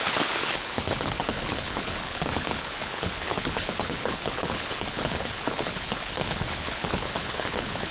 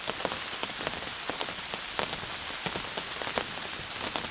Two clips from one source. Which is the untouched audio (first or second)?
second